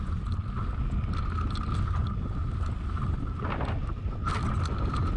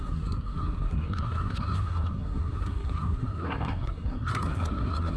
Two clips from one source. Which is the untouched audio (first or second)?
first